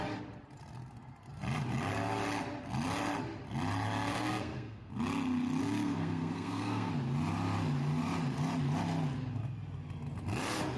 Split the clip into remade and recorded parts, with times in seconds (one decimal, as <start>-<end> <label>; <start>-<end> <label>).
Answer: 0.0-4.1 recorded; 4.1-4.9 remade; 4.9-5.6 recorded; 5.6-6.9 remade; 6.9-10.8 recorded